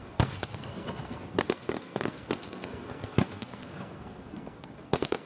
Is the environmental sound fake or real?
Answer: fake